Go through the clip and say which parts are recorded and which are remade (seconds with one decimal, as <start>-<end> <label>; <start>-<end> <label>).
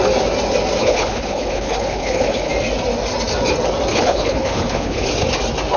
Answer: 0.0-0.8 recorded; 0.8-2.5 remade; 2.5-3.9 recorded; 3.9-5.1 remade; 5.1-5.8 recorded